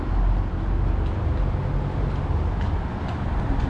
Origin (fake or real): real